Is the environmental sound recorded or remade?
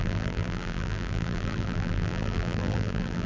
remade